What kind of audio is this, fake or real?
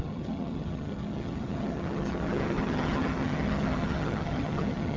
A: fake